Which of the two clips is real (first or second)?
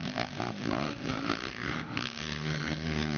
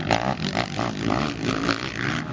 second